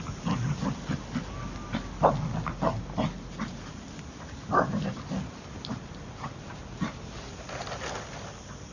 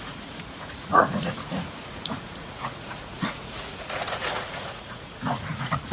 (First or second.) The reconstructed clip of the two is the second